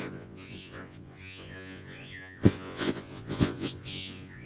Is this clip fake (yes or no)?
yes